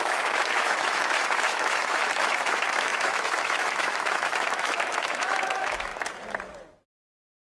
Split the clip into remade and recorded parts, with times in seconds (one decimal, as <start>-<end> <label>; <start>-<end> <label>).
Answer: 0.0-5.9 remade; 5.9-6.9 recorded; 6.9-7.5 remade

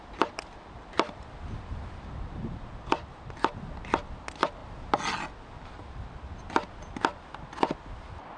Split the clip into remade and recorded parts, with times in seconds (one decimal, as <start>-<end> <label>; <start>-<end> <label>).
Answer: 0.0-8.4 recorded

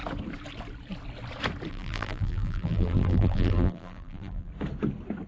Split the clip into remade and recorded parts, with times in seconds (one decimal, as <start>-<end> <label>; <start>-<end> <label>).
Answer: 0.0-1.7 recorded; 1.7-4.5 remade; 4.5-5.3 recorded

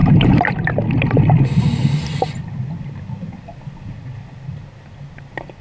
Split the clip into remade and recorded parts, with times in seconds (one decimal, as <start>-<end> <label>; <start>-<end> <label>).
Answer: 0.0-5.6 recorded

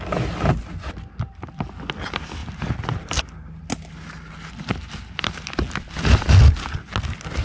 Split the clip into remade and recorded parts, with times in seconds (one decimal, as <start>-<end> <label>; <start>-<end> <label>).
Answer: 0.0-7.4 recorded